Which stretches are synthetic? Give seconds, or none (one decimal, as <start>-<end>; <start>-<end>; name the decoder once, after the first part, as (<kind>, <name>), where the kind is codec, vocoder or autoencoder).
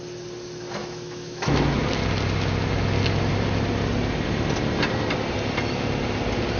0.8-1.6 (autoencoder, DAC-VAE)